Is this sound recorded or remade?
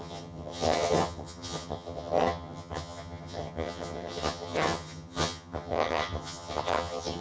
remade